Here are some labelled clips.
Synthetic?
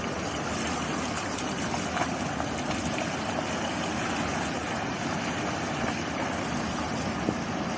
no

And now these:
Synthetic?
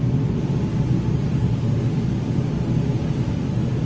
no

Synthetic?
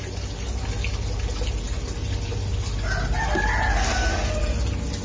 no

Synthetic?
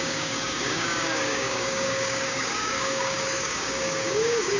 yes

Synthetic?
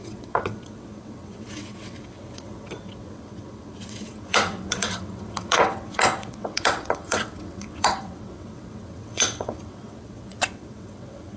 yes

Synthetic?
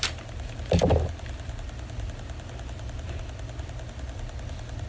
no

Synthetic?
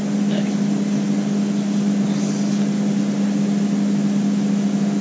no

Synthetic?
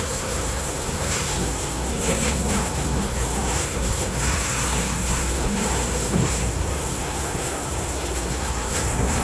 yes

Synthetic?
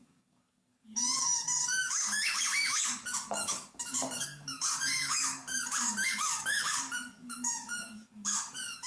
yes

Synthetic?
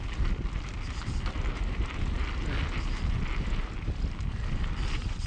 no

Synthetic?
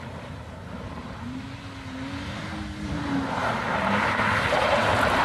no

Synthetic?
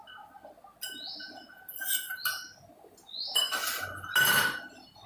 no